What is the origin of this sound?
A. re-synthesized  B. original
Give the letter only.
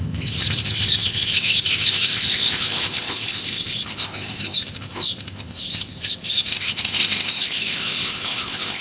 A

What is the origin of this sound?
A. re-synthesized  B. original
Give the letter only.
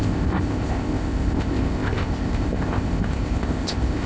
A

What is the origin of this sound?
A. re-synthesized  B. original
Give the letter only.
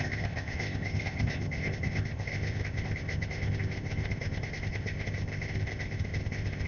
A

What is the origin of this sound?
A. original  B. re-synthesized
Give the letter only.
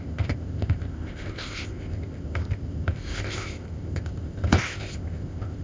B